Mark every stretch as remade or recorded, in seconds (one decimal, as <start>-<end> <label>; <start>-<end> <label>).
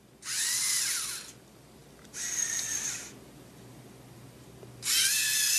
0.0-5.6 recorded